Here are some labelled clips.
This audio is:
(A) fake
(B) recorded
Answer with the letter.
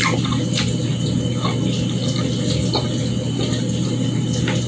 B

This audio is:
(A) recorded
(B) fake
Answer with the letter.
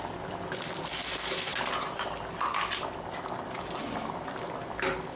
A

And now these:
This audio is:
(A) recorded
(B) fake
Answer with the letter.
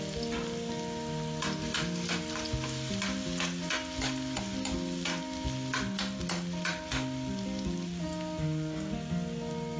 A